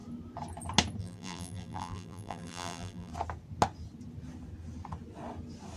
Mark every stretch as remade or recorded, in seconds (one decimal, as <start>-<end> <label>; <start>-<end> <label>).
0.0-1.0 recorded; 1.0-3.1 remade; 3.1-5.8 recorded